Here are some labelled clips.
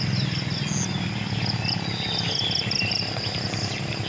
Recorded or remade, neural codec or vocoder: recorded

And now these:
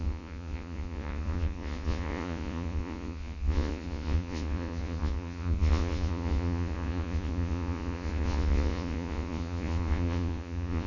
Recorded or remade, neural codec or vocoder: remade, vocoder, Vocos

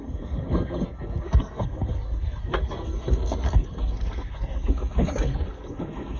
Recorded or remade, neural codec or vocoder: remade, codec, SNAC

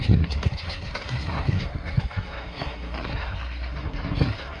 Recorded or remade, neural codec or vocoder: remade, codec, SNAC